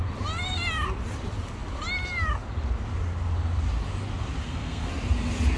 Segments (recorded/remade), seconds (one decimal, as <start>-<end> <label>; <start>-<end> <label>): 0.0-4.4 recorded; 4.4-4.9 remade; 4.9-5.6 recorded